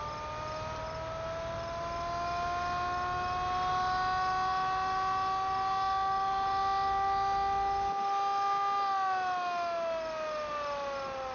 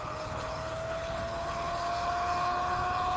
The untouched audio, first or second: first